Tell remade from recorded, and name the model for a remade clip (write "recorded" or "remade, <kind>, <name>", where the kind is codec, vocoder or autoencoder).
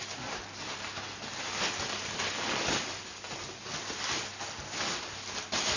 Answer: recorded